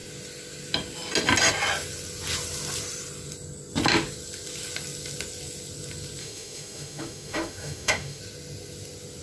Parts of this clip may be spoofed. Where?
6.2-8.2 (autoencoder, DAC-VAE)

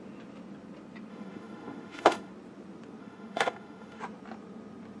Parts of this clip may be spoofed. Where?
1.1-2.3 (autoencoder, DAC-VAE); 3.0-4.0

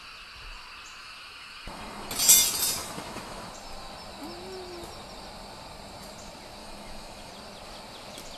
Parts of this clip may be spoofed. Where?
1.0-2.1 (autoencoder, DAC-VAE); 2.8-3.5; 6.6-7.3

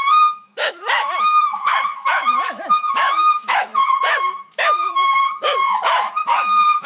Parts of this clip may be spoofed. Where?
0.0-6.9 (autoencoder, DAC-VAE)

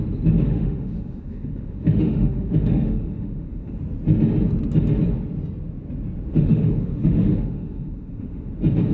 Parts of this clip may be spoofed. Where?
0.5-3.8 (autoencoder, DAC-VAE); 6.3-8.5